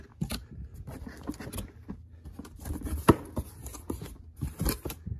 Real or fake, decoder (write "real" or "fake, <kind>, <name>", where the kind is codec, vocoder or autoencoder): real